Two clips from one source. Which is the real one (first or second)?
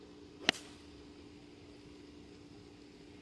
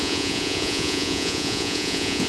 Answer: first